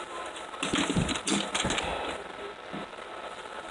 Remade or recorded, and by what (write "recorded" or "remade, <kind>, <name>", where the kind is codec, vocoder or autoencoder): recorded